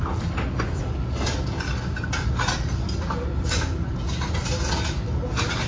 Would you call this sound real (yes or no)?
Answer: yes